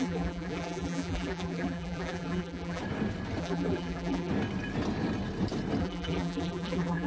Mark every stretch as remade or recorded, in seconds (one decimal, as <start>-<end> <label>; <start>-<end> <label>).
0.0-2.8 remade; 2.8-3.4 recorded; 3.4-4.3 remade; 4.3-5.8 recorded; 5.8-7.1 remade

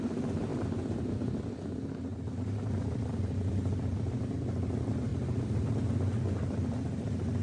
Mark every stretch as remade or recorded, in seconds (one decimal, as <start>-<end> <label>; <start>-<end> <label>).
0.0-2.1 recorded; 2.1-3.8 remade; 3.8-5.1 recorded; 5.1-5.6 remade; 5.6-7.4 recorded

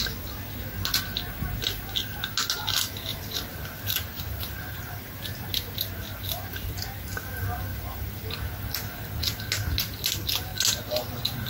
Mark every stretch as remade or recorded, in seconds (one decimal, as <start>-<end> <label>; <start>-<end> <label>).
0.0-3.1 recorded; 3.1-5.0 remade; 5.0-7.7 recorded; 7.7-8.3 remade; 8.3-11.5 recorded

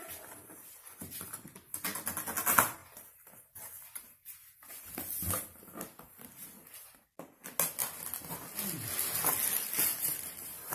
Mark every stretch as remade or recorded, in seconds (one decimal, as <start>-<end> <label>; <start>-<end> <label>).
0.0-9.9 recorded; 9.9-10.7 remade